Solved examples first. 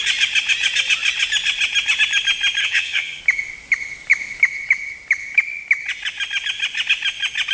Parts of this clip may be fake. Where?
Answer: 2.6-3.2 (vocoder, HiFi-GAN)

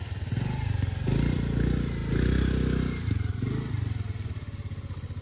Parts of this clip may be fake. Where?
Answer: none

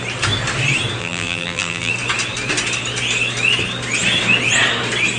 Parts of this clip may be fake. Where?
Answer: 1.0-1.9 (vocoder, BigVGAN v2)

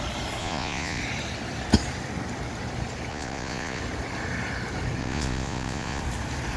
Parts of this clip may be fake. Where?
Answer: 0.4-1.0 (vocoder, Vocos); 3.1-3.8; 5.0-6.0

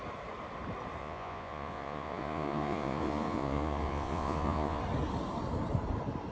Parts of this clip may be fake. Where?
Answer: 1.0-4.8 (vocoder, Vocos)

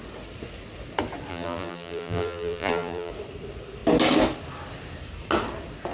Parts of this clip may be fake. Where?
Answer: 1.3-3.1 (vocoder, BigVGAN v2)

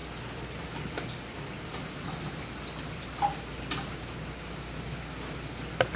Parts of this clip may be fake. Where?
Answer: none